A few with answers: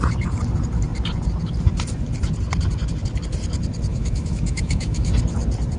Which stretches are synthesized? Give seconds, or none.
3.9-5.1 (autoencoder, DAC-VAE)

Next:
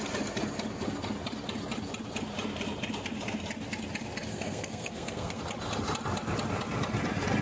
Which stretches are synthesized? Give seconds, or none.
4.3-5.4 (codec, SNAC)

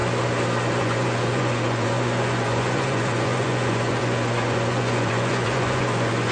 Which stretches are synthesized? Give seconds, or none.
0.8-6.3 (vocoder, Vocos)